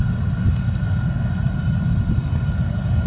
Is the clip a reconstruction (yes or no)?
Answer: no